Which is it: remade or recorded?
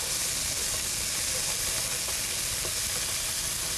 recorded